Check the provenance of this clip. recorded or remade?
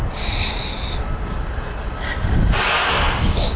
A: recorded